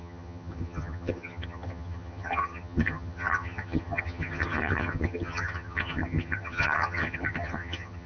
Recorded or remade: remade